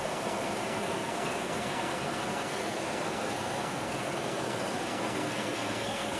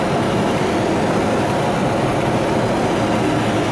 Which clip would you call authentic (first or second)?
second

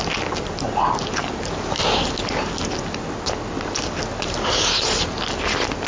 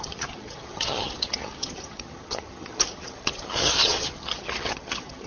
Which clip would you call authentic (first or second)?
first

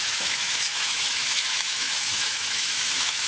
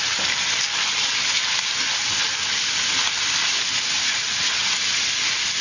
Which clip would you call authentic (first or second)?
second